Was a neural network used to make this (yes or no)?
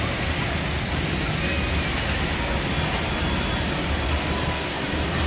no